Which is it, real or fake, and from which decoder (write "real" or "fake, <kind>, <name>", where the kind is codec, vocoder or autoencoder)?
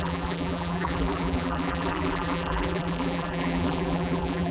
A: fake, vocoder, BigVGAN v2